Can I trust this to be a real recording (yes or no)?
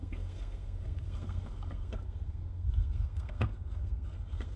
no